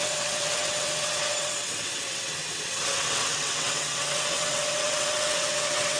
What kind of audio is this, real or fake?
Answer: fake